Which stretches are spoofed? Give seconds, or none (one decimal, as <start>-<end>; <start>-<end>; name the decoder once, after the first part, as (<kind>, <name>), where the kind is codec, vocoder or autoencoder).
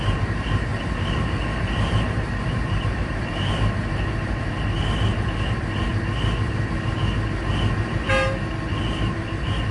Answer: 0.0-5.1 (vocoder, BigVGAN v2); 8.7-9.7